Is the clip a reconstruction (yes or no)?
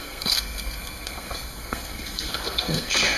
yes